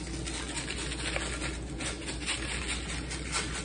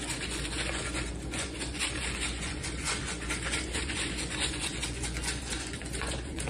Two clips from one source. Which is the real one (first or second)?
first